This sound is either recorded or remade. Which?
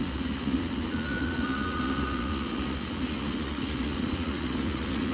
remade